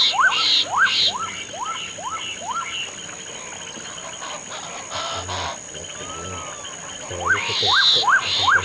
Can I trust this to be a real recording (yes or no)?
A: yes